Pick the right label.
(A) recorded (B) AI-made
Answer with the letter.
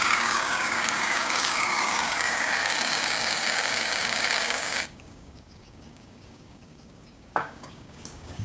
B